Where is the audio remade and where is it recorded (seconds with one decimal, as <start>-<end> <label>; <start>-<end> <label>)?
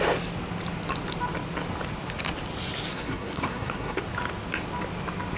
0.0-2.9 recorded; 2.9-4.0 remade; 4.0-5.4 recorded